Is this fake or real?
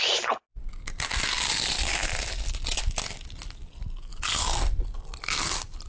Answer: real